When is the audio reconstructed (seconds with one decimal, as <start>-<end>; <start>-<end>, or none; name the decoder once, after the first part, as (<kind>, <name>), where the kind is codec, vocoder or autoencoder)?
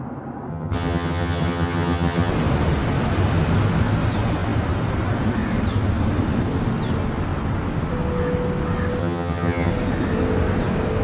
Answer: 0.5-2.3 (vocoder, HiFi-GAN); 9.0-9.7